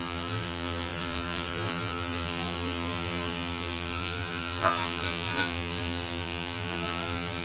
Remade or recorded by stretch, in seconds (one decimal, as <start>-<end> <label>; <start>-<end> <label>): 0.0-7.4 remade